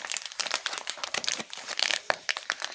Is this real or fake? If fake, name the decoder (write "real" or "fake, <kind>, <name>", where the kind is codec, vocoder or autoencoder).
fake, vocoder, BigVGAN v2